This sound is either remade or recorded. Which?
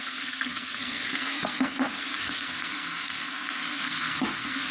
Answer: remade